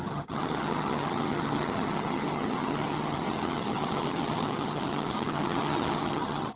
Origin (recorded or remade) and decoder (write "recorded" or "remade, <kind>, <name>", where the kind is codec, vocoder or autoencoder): remade, vocoder, HiFi-GAN